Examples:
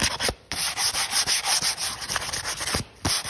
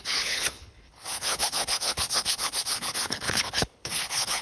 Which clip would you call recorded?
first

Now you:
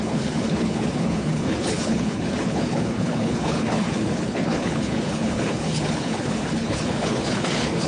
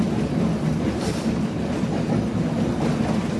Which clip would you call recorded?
second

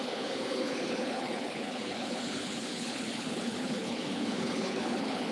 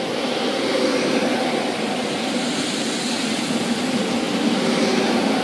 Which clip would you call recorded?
second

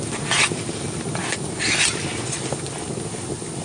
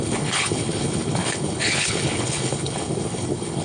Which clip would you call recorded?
first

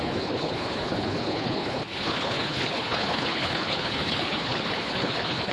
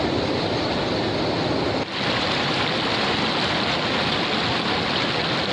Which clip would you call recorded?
second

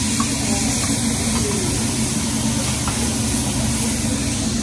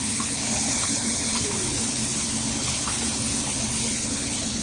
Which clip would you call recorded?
first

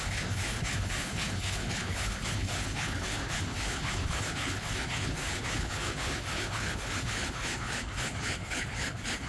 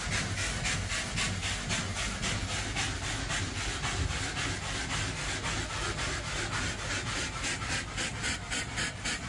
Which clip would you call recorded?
second